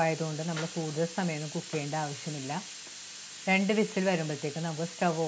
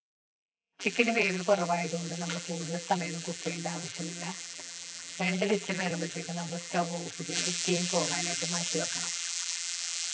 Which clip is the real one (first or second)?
first